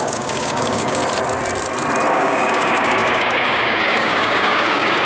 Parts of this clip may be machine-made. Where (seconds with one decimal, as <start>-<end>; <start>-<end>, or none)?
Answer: 0.0-1.0; 2.1-5.0